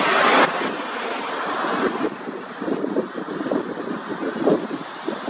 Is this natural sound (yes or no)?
yes